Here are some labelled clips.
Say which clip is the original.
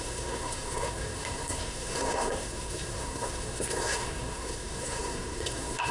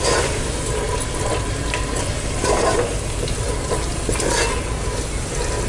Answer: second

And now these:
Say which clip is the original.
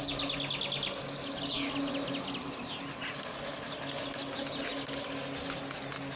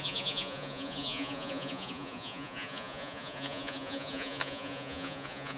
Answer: first